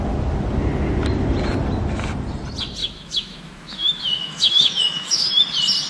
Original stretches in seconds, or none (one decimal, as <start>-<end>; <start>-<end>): 0.0-2.8; 5.3-5.9